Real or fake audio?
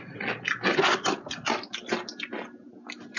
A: real